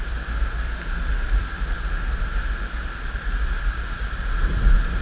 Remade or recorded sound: recorded